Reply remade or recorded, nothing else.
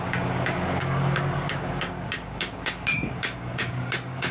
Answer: remade